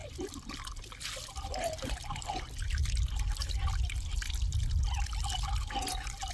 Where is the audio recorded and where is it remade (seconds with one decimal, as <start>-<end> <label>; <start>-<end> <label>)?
0.0-6.3 recorded